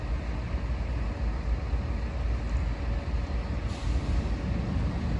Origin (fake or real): real